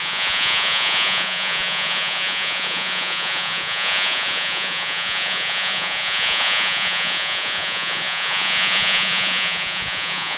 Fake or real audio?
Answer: fake